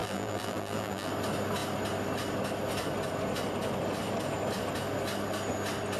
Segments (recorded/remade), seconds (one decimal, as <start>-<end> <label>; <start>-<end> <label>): 0.0-1.1 remade; 1.1-6.0 recorded

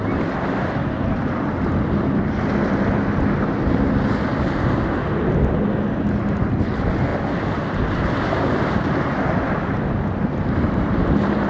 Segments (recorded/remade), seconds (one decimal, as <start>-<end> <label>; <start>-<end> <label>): 0.0-11.5 recorded

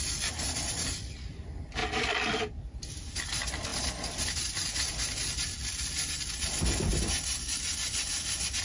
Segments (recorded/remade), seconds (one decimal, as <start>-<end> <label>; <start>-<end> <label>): 0.0-1.8 recorded; 1.8-2.8 remade; 2.8-8.6 recorded

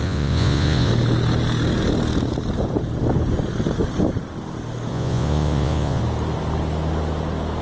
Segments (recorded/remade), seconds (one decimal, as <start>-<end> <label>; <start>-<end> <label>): 0.0-0.9 remade; 0.9-4.9 recorded; 4.9-6.0 remade; 6.0-7.6 recorded